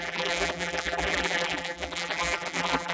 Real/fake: fake